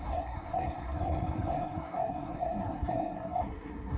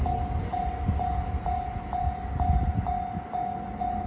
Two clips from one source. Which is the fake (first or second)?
first